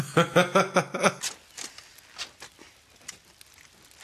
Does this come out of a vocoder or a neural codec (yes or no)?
no